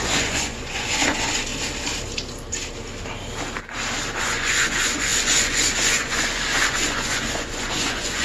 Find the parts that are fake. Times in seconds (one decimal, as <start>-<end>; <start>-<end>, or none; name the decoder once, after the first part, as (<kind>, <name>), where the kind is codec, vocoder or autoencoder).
0.0-1.5 (vocoder, Vocos); 4.2-8.2